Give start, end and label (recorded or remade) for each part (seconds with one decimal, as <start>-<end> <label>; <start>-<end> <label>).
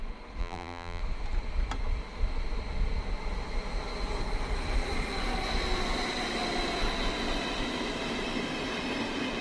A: 0.0-0.4 recorded; 0.4-1.0 remade; 1.0-9.4 recorded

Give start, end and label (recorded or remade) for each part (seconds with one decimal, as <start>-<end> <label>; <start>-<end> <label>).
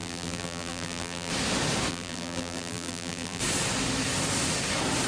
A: 0.0-1.3 remade; 1.3-1.9 recorded; 1.9-3.4 remade; 3.4-5.1 recorded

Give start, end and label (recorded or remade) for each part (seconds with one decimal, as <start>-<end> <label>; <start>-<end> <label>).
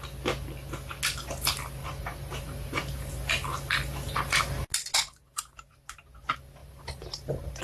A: 0.0-1.8 recorded; 1.8-3.1 remade; 3.1-3.5 recorded; 3.5-4.4 remade; 4.4-5.3 recorded; 5.3-6.0 remade; 6.0-6.6 recorded; 6.6-7.6 remade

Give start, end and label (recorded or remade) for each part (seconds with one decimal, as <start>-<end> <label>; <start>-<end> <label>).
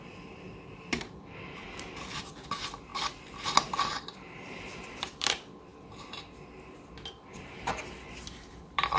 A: 0.0-2.9 remade; 2.9-5.0 recorded; 5.0-5.7 remade; 5.7-8.4 recorded; 8.4-9.0 remade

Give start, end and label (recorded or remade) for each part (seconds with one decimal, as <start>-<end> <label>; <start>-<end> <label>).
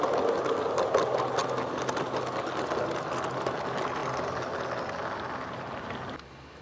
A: 0.0-6.6 recorded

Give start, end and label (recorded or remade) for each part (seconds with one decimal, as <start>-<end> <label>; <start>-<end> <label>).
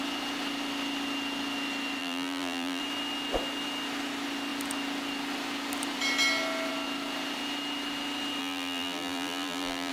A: 0.0-2.0 recorded; 2.0-2.8 remade; 2.8-8.4 recorded; 8.4-9.9 remade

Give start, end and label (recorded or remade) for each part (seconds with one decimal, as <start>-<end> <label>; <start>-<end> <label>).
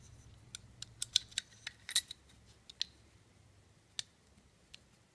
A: 0.0-5.1 recorded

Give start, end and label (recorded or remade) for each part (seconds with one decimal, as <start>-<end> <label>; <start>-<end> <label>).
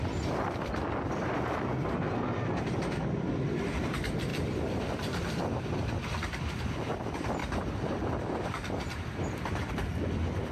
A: 0.0-4.3 recorded; 4.3-5.4 remade; 5.4-7.4 recorded; 7.4-9.7 remade; 9.7-10.5 recorded